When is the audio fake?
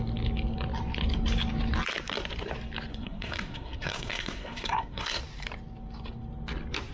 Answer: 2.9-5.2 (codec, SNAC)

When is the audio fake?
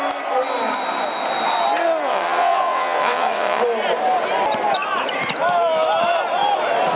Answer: 2.1-3.6 (vocoder, WaveNeXt)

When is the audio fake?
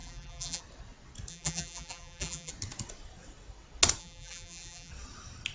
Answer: 0.0-0.6 (vocoder, BigVGAN v2); 1.3-2.5; 4.0-4.9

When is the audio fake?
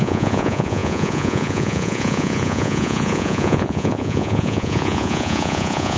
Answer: 0.0-6.0 (vocoder, Vocos)